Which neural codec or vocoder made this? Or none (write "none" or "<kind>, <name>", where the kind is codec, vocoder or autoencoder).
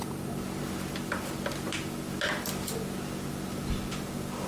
none